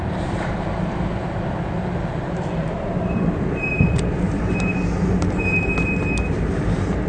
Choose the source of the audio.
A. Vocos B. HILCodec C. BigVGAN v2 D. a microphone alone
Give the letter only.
C